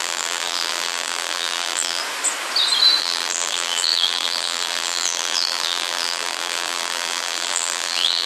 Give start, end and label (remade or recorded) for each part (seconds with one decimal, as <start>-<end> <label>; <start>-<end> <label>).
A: 0.0-2.0 remade; 2.0-3.0 recorded; 3.0-8.3 remade